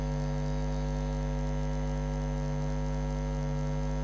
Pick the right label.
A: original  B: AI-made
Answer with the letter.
A